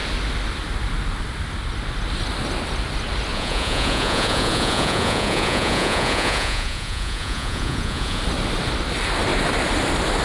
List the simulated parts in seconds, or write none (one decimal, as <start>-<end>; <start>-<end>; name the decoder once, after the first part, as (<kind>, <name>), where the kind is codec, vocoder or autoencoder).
3.3-8.2 (vocoder, Vocos)